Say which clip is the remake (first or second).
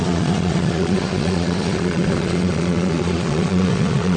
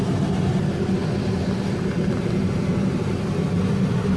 first